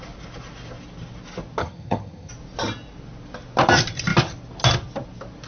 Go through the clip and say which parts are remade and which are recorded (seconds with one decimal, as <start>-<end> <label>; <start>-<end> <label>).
0.0-1.6 recorded; 1.6-2.3 remade; 2.3-5.5 recorded